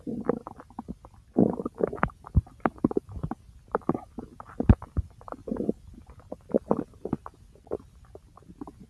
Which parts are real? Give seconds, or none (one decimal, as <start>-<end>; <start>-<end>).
0.0-8.9